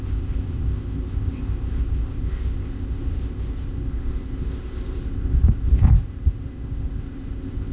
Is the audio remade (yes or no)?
yes